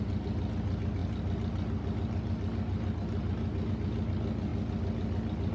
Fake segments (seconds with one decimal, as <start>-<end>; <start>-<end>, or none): none

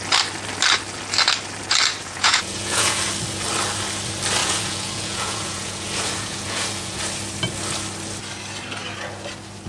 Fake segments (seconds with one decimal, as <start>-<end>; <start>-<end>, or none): 1.9-3.0; 4.4-7.0

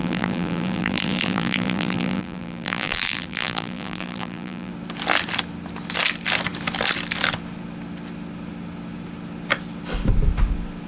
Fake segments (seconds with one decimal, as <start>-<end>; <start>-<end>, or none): 0.0-4.7